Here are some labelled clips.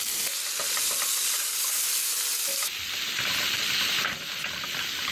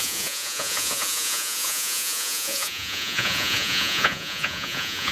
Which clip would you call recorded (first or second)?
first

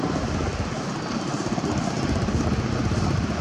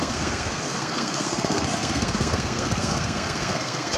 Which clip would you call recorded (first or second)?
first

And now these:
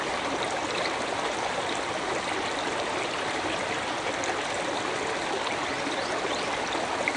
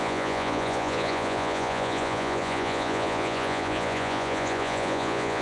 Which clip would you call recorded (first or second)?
first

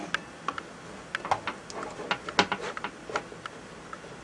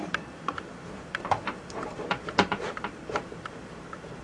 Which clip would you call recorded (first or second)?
first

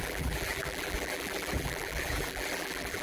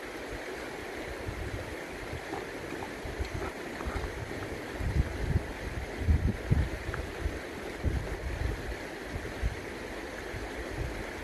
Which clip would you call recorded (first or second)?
second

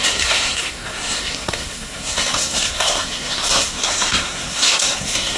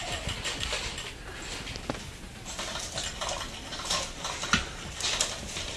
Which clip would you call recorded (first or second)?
second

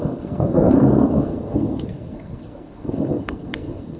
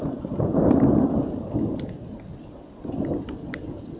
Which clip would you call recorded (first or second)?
second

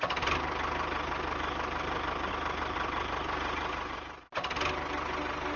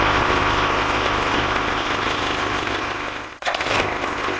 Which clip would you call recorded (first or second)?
first